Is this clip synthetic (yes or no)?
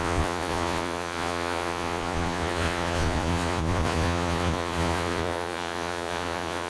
yes